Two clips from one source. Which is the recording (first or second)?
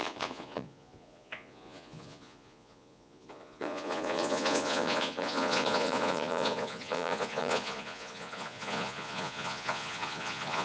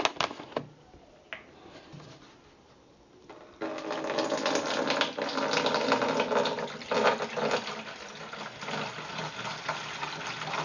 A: second